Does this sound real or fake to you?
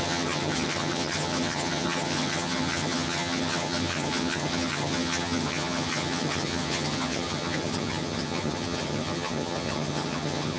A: fake